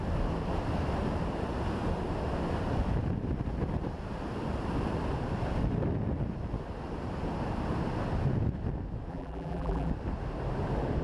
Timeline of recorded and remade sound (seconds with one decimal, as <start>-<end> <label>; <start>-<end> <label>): 0.0-9.1 recorded; 9.1-9.9 remade; 9.9-11.0 recorded